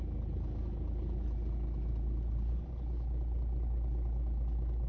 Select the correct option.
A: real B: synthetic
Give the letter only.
A